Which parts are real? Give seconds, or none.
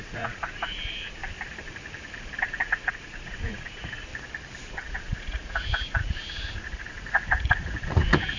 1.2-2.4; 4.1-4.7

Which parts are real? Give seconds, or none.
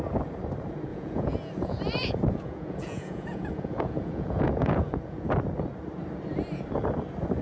0.0-0.9; 5.3-7.4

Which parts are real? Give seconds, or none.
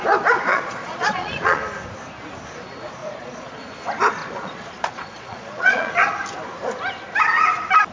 0.0-0.5; 1.6-3.0; 3.6-4.2; 5.9-7.9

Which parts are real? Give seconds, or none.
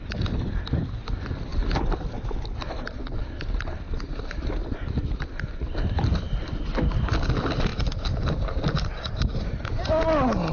0.0-10.5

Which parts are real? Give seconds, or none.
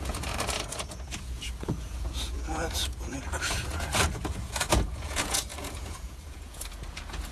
none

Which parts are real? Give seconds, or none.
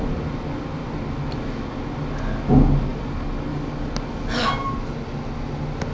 0.0-5.9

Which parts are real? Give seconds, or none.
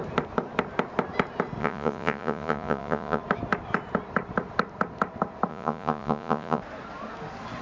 0.0-1.6; 3.2-5.5; 6.6-7.6